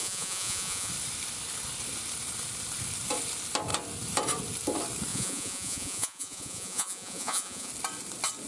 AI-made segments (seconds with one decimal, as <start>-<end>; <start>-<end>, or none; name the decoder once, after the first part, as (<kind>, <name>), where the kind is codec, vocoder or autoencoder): 0.0-0.9 (vocoder, Vocos); 5.1-7.7